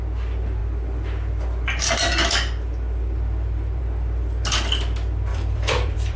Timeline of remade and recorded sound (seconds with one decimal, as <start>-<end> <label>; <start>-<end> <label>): 0.0-5.3 recorded; 5.3-6.2 remade